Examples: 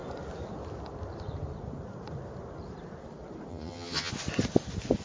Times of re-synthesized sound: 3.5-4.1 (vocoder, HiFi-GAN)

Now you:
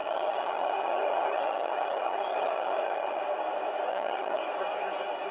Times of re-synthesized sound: 0.0-3.2 (vocoder, HiFi-GAN); 3.9-4.4

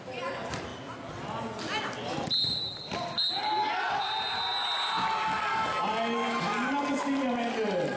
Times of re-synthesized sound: none